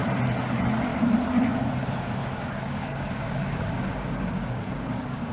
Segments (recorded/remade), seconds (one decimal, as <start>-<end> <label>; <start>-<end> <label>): 0.0-2.2 recorded; 2.2-5.3 remade